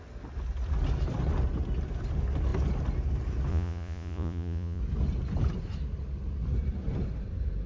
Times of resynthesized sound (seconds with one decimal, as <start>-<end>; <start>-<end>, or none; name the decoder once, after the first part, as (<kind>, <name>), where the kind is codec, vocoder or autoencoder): 3.5-4.8 (vocoder, Vocos)